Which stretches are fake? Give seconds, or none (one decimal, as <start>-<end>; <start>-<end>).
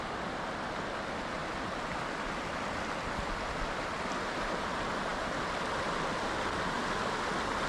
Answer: none